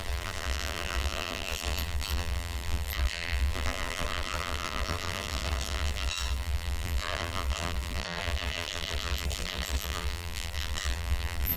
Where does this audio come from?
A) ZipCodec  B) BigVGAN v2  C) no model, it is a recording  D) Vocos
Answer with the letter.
B